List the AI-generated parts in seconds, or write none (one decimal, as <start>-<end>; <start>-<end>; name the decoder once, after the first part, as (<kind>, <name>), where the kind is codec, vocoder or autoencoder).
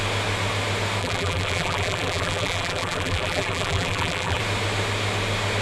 1.0-4.4 (vocoder, BigVGAN v2)